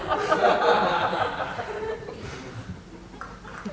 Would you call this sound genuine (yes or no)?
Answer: yes